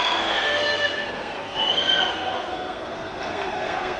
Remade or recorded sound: remade